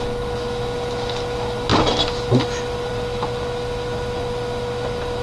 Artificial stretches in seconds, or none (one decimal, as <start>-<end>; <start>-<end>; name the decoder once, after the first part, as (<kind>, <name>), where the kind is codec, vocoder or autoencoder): none